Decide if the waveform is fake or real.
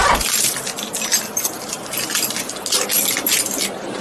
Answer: real